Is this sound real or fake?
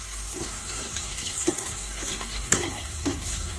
fake